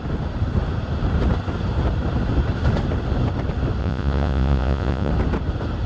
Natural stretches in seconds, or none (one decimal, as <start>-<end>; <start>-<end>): 0.0-3.8; 5.1-5.9